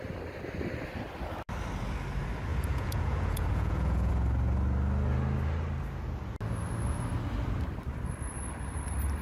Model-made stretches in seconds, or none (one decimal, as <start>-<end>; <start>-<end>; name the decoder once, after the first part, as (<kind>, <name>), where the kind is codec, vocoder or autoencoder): 2.5-4.1 (vocoder, Vocos)